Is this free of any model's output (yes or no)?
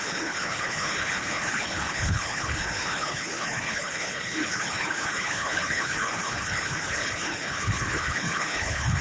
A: no